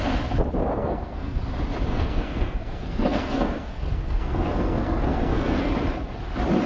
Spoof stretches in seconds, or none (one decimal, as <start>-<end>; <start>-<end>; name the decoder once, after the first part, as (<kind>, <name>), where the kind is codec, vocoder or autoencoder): 0.7-1.4 (codec, SNAC); 1.9-5.7